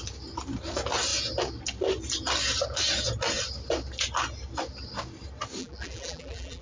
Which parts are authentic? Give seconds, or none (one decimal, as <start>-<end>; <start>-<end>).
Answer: 0.0-5.6